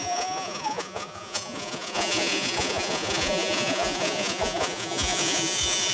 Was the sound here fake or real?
fake